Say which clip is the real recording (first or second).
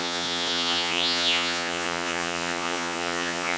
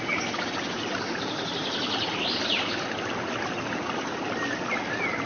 second